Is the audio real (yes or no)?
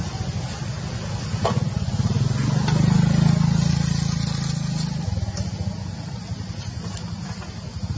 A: yes